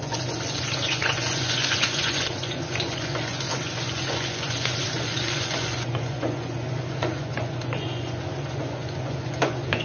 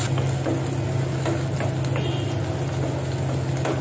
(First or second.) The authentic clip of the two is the second